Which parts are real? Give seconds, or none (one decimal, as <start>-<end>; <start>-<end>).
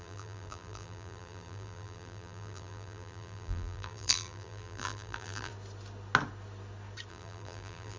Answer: 5.5-7.1